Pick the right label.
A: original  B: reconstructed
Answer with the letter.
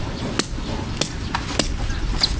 A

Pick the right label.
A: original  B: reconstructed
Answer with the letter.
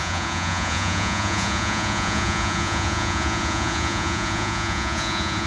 B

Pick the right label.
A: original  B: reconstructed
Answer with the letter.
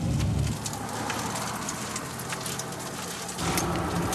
A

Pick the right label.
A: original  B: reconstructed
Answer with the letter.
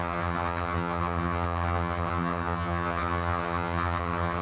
B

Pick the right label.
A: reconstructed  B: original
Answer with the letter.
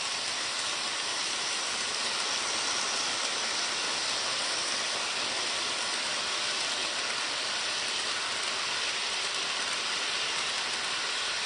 B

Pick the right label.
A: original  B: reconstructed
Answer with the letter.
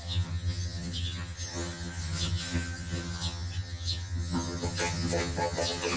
B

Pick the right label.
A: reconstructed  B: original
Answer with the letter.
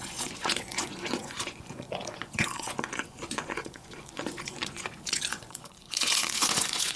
A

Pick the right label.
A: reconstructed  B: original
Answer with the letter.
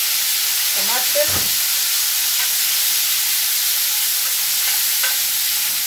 B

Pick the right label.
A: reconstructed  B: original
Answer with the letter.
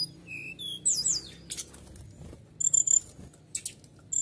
B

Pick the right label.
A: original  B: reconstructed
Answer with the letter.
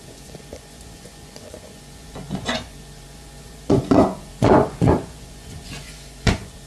B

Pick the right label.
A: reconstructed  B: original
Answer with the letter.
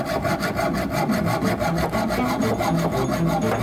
B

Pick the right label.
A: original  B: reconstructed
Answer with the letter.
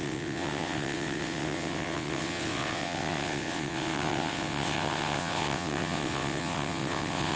B